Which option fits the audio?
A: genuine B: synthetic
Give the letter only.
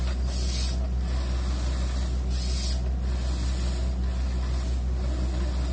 A